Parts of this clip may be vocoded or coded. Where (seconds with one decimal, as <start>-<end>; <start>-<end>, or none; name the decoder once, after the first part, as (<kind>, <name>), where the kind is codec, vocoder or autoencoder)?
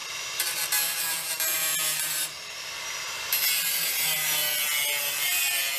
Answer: 0.0-4.4 (vocoder, BigVGAN v2); 5.0-5.8